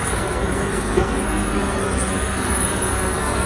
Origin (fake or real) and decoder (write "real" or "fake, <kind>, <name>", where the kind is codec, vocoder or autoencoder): fake, codec, SNAC